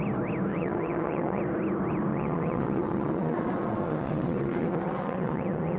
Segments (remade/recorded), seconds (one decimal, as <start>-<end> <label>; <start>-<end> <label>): 0.0-0.5 recorded; 0.5-1.4 remade; 1.4-2.1 recorded; 2.1-5.8 remade